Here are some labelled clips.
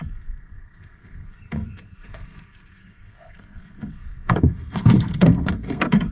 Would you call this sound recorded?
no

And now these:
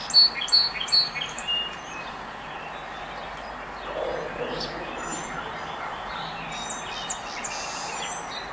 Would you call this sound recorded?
yes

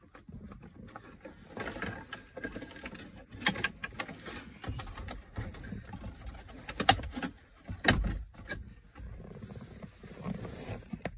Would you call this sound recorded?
yes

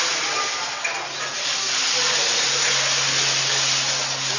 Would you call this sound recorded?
yes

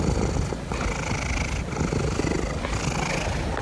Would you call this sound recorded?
yes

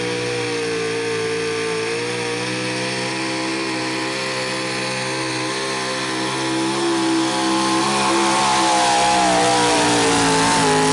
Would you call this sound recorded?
yes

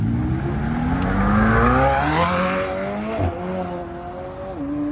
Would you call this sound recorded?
yes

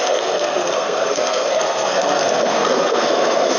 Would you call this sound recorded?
no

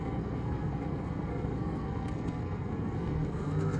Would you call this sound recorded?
no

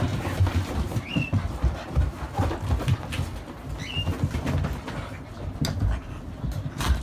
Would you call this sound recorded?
yes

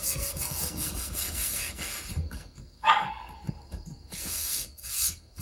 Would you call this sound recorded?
no